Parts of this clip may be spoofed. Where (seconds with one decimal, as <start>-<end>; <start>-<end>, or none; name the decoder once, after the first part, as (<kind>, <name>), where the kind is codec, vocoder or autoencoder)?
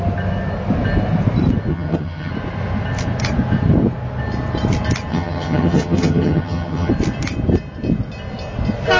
1.7-2.3 (vocoder, HiFi-GAN); 5.1-6.9